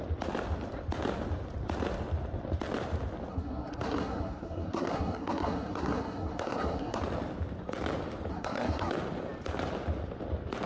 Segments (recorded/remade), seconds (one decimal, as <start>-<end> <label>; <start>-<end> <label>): 0.0-3.3 recorded; 3.3-7.0 remade; 7.0-8.3 recorded; 8.3-8.9 remade; 8.9-10.7 recorded